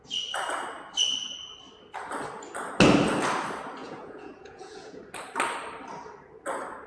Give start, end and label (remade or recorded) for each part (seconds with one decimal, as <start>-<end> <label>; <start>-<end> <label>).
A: 0.0-3.8 recorded; 3.8-5.0 remade; 5.0-6.9 recorded